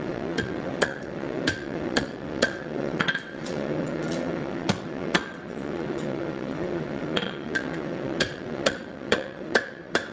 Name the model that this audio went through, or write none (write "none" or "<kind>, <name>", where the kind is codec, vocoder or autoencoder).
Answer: vocoder, WaveNeXt